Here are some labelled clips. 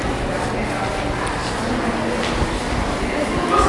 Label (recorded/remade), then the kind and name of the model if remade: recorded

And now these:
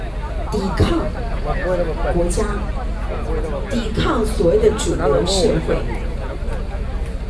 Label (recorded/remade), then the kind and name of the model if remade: recorded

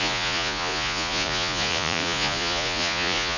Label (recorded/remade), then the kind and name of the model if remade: remade, vocoder, Vocos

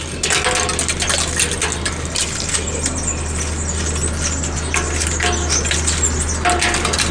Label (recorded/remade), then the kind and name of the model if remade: recorded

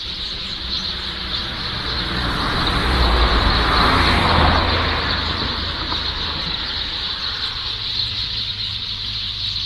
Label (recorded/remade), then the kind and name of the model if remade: remade, vocoder, BigVGAN v2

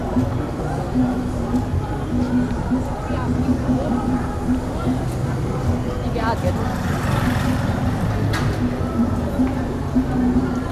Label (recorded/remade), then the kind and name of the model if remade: recorded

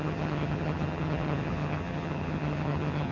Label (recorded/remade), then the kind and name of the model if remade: remade, vocoder, HiFi-GAN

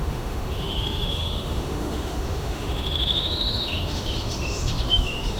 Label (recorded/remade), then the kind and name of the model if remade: remade, autoencoder, DAC-VAE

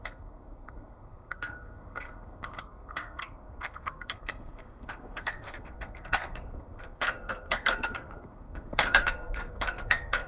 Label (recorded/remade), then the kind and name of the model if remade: remade, codec, SNAC